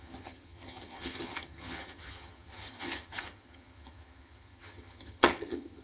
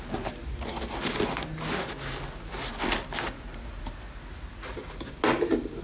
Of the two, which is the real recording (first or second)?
second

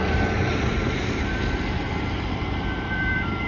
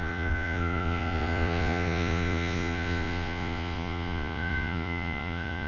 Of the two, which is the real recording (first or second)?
first